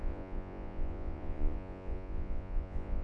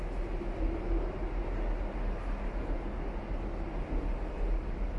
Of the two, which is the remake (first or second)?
first